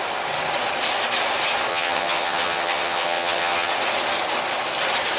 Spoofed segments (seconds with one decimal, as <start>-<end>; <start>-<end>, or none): 1.7-3.7